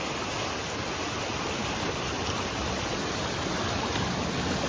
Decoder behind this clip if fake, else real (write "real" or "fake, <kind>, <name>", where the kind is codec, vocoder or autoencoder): real